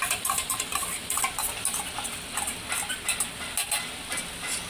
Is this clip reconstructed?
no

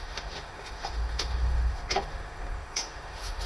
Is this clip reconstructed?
yes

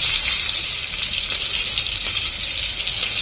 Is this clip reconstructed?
no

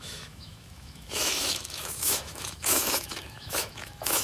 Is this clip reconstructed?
yes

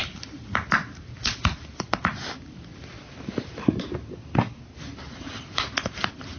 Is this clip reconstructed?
no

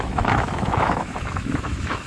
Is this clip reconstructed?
yes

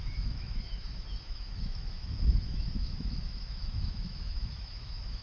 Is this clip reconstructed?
yes